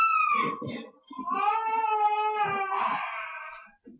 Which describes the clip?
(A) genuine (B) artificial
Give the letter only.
A